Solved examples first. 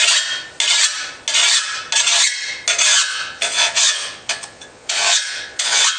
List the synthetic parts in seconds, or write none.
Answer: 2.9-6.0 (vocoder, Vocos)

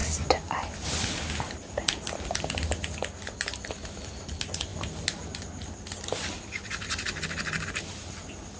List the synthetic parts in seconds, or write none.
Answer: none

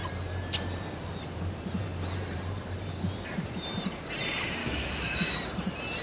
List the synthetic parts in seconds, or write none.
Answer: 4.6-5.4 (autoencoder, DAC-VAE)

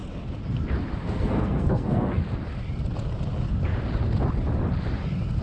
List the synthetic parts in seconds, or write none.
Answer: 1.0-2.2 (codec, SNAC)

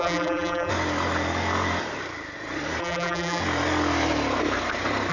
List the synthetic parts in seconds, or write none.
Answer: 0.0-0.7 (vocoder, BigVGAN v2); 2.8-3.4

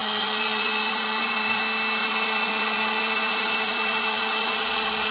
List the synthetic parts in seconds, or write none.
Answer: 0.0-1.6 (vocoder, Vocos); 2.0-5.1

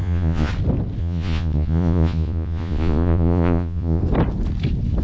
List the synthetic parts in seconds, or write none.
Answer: 0.0-0.5 (vocoder, Vocos); 1.0-4.0